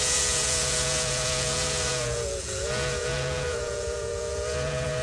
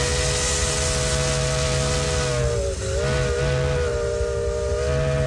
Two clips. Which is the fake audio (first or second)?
first